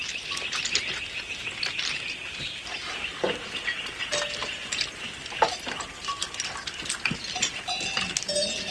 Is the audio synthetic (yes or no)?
no